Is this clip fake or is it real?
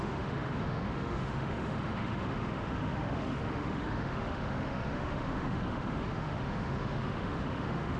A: fake